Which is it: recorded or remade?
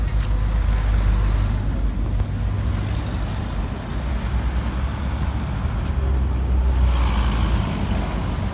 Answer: recorded